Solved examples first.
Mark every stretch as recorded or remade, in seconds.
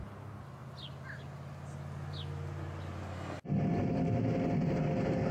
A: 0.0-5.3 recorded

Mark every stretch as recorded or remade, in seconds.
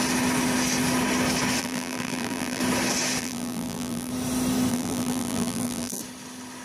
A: 0.0-1.6 recorded; 1.6-2.6 remade; 2.6-3.2 recorded; 3.2-4.1 remade; 4.1-4.7 recorded; 4.7-6.0 remade; 6.0-6.6 recorded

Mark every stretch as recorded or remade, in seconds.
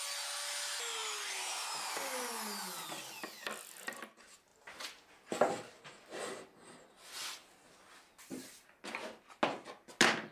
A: 0.0-10.3 recorded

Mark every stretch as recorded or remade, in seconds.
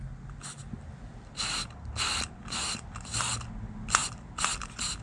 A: 0.0-5.0 recorded